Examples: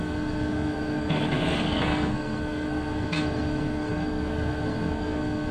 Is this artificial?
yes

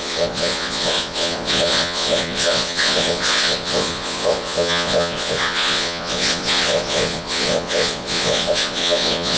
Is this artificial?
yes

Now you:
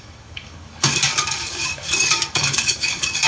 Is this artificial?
yes